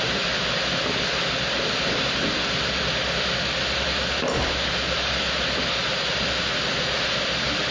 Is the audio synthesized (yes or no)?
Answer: no